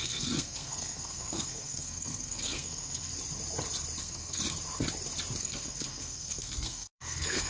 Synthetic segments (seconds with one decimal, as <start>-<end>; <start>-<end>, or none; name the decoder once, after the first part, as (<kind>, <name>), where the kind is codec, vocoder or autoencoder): 0.0-3.1 (codec, SNAC); 4.0-4.4; 5.4-7.5